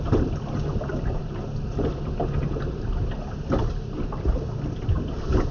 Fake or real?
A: real